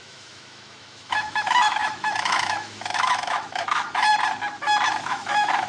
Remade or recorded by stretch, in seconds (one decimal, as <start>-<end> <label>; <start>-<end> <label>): 0.0-4.1 remade; 4.1-5.0 recorded; 5.0-5.7 remade

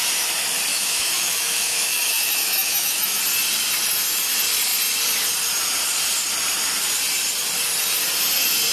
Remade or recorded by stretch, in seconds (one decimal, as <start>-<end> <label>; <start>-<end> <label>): 0.0-0.7 recorded; 0.7-3.2 remade; 3.2-8.7 recorded

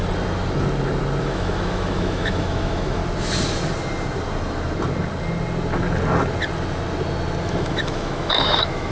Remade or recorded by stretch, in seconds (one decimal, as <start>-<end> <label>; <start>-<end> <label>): 0.0-1.2 recorded; 1.2-3.0 remade; 3.0-7.4 recorded; 7.4-8.9 remade

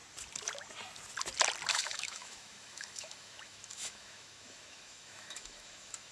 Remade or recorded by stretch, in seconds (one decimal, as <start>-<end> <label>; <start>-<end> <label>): 0.0-1.7 recorded; 1.7-6.1 remade

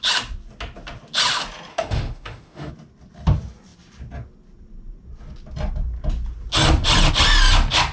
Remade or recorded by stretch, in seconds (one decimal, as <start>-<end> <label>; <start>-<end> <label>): 0.0-1.7 recorded; 1.7-2.7 remade; 2.7-7.9 recorded

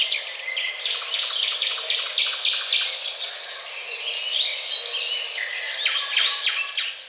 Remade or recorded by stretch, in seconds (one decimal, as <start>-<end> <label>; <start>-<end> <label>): 0.0-7.1 recorded

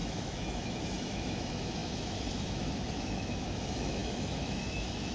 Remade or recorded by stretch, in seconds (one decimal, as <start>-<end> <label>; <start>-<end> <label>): 0.0-5.1 remade